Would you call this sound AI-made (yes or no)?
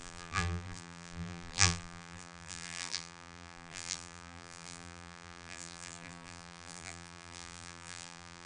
yes